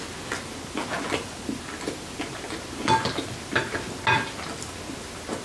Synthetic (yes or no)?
no